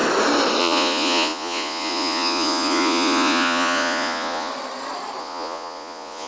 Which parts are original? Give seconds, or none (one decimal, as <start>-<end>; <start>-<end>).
0.0-0.6; 4.5-5.2